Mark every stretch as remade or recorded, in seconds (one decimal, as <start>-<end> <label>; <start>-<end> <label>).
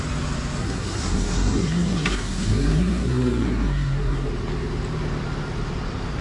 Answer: 0.0-0.6 recorded; 0.6-4.3 remade; 4.3-6.2 recorded